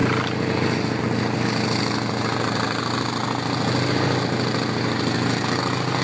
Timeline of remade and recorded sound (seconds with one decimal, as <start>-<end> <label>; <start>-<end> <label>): 0.0-6.0 recorded